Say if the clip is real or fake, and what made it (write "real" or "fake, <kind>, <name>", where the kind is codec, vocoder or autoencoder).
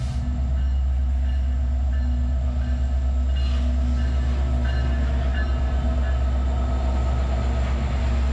real